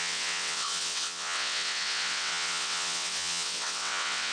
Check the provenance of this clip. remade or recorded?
remade